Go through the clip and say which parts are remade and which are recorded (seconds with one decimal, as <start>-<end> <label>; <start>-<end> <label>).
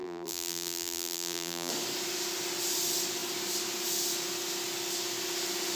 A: 0.0-1.7 remade; 1.7-5.8 recorded